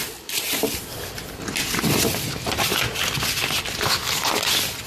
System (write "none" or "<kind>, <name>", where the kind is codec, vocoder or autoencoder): none